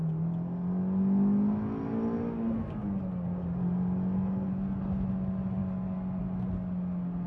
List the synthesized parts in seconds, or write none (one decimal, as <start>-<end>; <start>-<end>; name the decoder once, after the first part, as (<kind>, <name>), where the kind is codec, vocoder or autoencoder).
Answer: none